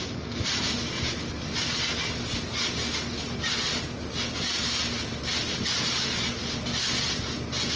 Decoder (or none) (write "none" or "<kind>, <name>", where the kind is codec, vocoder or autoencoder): none